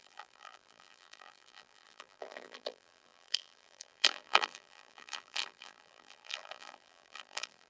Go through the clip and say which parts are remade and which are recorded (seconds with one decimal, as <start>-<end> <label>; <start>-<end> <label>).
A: 0.0-7.7 remade